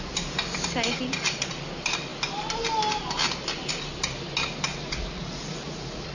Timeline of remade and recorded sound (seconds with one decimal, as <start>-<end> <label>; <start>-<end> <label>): 0.0-4.7 recorded; 4.7-6.1 remade

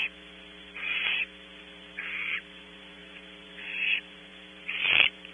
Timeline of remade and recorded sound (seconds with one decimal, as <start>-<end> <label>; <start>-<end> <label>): 0.0-5.3 remade